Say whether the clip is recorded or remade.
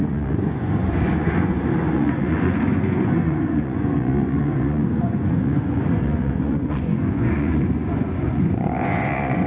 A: remade